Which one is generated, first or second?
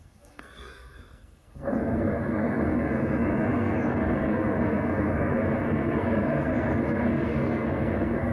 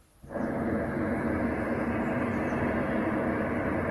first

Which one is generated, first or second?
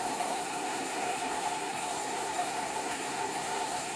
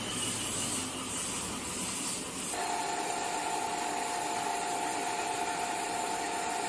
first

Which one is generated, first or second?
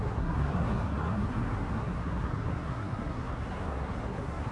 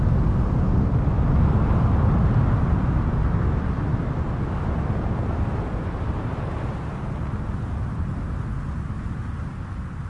first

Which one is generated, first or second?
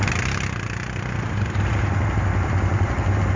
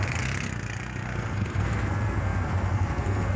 second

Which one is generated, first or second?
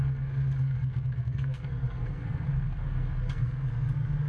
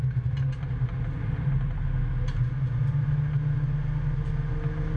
first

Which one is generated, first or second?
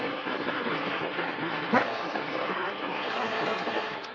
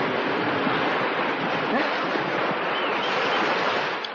first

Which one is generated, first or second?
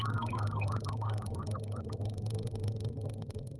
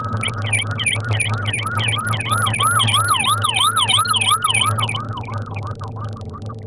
first